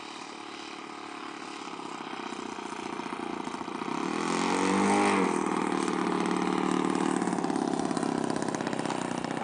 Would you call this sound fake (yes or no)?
no